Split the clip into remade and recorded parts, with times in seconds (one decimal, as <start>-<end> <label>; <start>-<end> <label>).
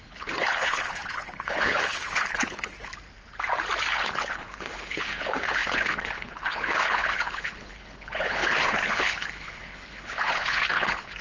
0.0-2.9 remade; 2.9-3.9 recorded; 3.9-11.2 remade